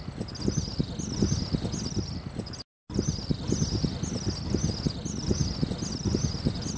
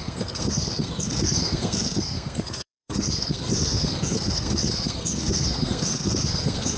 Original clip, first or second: first